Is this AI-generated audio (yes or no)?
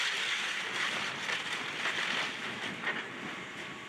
no